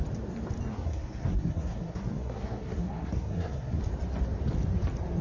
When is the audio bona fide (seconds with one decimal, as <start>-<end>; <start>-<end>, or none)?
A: 0.0-0.7; 3.8-5.2

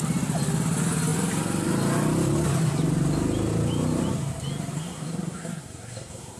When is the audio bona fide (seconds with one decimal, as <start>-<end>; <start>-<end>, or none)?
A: 0.0-4.8

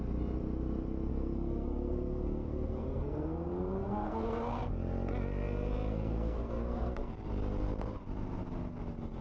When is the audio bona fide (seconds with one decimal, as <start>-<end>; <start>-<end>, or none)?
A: 0.0-1.1; 4.7-5.9; 7.1-9.2

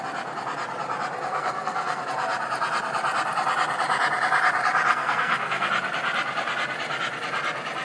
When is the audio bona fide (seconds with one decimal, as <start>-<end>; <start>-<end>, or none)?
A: 0.0-1.3; 2.0-4.9; 5.7-7.8

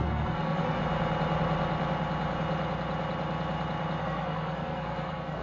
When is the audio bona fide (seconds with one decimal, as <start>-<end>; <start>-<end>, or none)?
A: 0.8-4.0